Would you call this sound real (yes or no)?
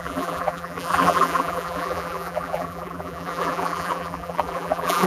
no